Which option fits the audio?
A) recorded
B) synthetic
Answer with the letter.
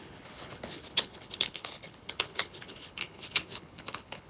B